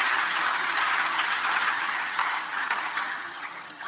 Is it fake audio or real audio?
fake